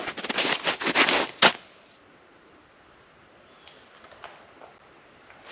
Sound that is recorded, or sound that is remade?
recorded